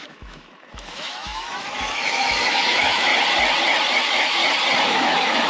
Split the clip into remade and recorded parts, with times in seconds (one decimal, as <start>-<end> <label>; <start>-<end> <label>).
0.0-3.1 remade; 3.1-4.0 recorded; 4.0-4.4 remade; 4.4-4.9 recorded; 4.9-5.5 remade